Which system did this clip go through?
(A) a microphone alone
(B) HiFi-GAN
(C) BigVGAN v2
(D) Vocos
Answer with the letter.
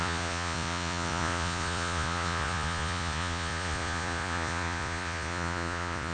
D